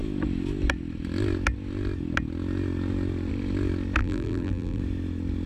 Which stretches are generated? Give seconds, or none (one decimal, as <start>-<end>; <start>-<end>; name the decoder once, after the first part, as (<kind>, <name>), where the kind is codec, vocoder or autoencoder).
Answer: 4.0-4.8 (vocoder, BigVGAN v2)